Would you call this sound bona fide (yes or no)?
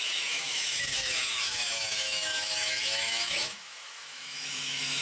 no